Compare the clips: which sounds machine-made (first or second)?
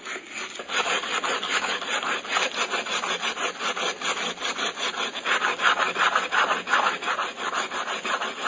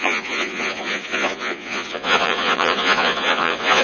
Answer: second